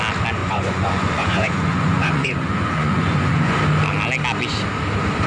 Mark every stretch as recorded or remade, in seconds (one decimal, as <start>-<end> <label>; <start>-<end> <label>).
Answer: 0.0-0.4 recorded; 0.4-3.6 remade; 3.6-5.3 recorded